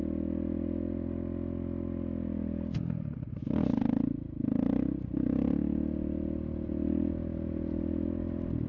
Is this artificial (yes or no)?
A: no